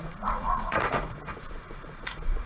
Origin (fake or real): fake